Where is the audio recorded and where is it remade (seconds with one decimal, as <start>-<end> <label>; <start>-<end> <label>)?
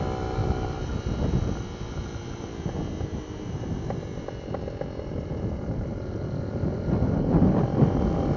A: 0.0-8.4 recorded